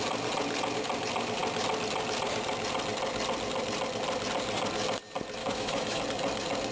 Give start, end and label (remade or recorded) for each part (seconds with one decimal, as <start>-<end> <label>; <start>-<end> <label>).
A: 0.0-5.4 recorded; 5.4-6.0 remade; 6.0-6.7 recorded